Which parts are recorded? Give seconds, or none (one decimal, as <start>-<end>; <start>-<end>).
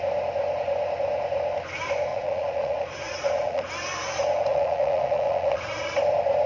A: 0.0-2.1; 3.7-4.5; 5.9-6.5